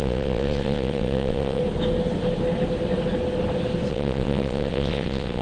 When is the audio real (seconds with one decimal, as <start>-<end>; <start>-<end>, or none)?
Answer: 1.6-3.9